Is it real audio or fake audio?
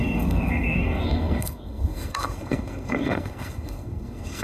fake